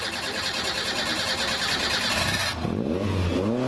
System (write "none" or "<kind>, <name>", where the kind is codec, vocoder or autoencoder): none